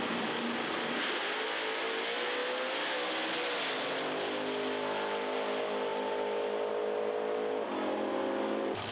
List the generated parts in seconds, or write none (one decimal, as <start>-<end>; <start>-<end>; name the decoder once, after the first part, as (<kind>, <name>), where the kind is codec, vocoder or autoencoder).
none